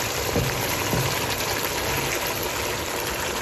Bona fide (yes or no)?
yes